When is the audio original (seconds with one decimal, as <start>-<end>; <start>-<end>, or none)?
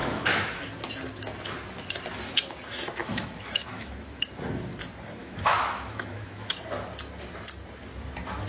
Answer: 0.6-3.0; 4.2-5.2; 6.5-8.5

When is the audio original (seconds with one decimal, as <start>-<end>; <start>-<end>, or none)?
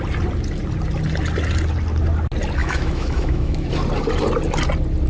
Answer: 0.0-2.6; 3.7-5.1